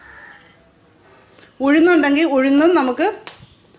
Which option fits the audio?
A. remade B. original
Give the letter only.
B